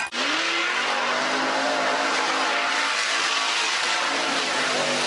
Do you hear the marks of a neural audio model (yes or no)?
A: no